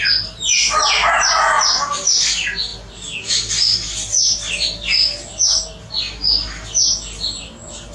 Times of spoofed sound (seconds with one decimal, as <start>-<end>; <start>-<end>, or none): none